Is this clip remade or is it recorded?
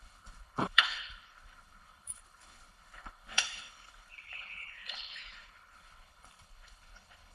remade